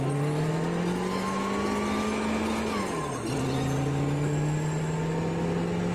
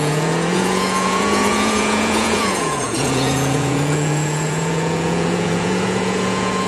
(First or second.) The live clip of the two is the first